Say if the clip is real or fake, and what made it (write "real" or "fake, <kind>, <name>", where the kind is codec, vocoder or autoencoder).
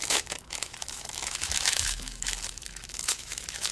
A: fake, autoencoder, DAC-VAE